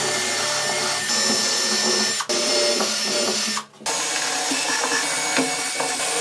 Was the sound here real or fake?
real